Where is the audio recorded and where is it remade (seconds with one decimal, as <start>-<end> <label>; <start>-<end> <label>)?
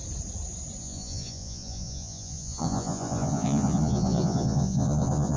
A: 0.0-0.8 recorded; 0.8-5.4 remade